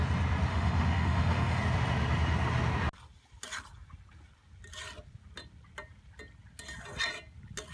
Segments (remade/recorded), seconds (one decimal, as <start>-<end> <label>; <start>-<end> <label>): 0.0-0.5 recorded; 0.5-1.6 remade; 1.6-7.7 recorded

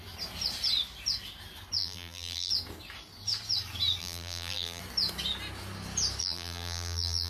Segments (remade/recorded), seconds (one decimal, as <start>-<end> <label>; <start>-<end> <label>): 0.0-1.8 recorded; 1.8-2.5 remade; 2.5-4.0 recorded; 4.0-4.8 remade; 4.8-6.2 recorded; 6.2-7.3 remade

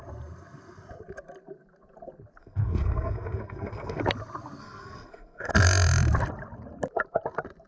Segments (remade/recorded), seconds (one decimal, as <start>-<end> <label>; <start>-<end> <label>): 0.0-2.4 recorded; 2.4-4.0 remade; 4.0-4.6 recorded; 4.6-5.5 remade; 5.5-7.7 recorded